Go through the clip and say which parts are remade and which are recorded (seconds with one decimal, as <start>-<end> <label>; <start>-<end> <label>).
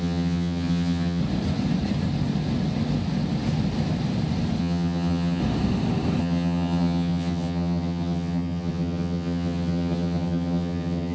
0.0-1.2 remade; 1.2-4.6 recorded; 4.6-5.4 remade; 5.4-6.2 recorded; 6.2-11.1 remade